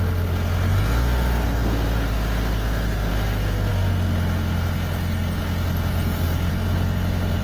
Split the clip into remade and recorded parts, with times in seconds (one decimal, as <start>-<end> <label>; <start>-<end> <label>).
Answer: 0.0-7.4 recorded